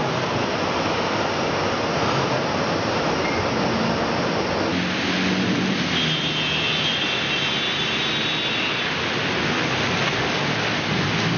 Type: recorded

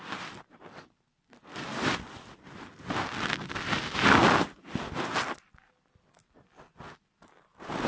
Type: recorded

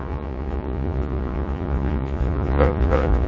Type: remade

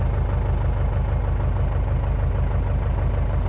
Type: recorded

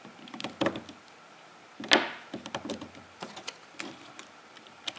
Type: recorded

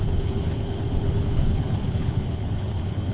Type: remade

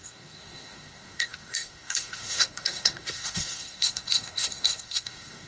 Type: remade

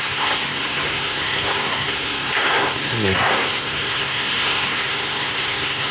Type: remade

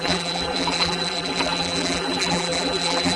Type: remade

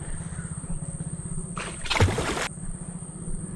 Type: recorded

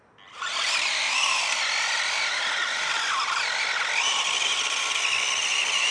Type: recorded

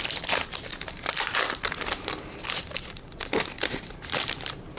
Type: remade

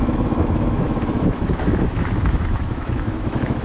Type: remade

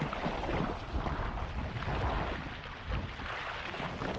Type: recorded